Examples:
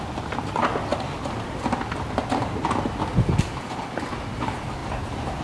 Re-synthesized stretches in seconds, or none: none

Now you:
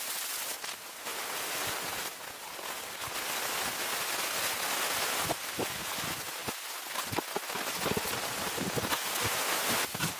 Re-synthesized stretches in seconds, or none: none

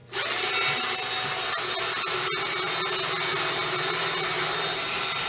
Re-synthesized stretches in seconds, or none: none

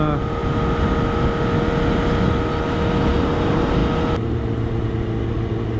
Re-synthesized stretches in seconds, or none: none

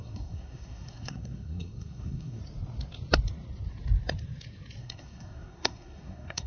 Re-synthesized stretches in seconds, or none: 0.0-2.4 (codec, SNAC); 4.8-6.5